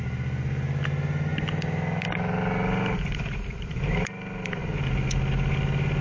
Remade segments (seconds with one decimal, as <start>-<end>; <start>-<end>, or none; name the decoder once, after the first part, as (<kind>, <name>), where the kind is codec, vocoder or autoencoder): none